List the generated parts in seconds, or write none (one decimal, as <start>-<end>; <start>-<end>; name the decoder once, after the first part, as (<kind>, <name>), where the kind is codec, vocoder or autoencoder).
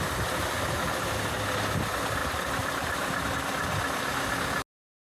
2.2-3.3 (vocoder, BigVGAN v2)